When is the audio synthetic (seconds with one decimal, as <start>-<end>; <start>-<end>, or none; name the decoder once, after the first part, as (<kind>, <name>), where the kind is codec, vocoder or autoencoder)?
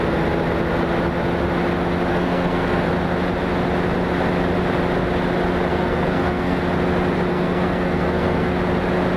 2.1-2.9 (codec, SNAC); 5.7-6.6; 7.3-8.5